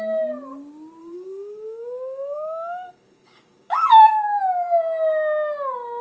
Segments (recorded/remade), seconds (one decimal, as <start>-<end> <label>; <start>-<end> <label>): 0.0-1.0 recorded; 1.0-4.1 remade; 4.1-6.0 recorded